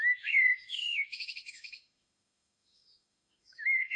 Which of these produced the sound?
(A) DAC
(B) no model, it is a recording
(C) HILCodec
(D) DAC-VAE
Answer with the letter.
D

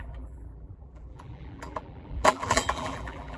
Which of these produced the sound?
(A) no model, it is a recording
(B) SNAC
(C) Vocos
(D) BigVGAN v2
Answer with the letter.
D